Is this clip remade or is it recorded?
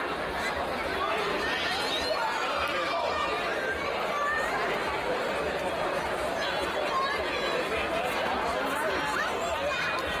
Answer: recorded